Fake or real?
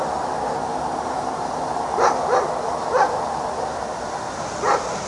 real